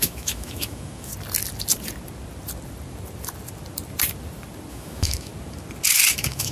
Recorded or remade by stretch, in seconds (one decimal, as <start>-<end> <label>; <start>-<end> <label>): 0.0-1.1 remade; 1.1-4.7 recorded; 4.7-5.3 remade; 5.3-6.1 recorded; 6.1-6.5 remade